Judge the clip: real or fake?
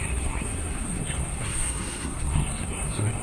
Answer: fake